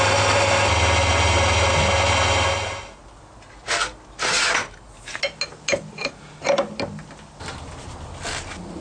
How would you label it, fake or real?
real